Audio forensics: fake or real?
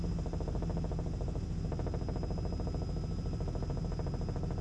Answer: real